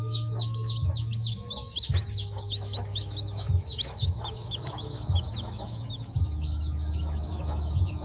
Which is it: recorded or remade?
remade